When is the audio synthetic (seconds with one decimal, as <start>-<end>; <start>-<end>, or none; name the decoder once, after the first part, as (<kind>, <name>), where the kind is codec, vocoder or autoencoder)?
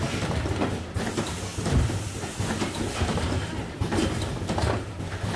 none